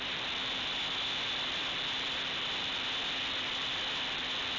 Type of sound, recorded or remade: recorded